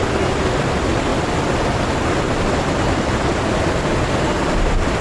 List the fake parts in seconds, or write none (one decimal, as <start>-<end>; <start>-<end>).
none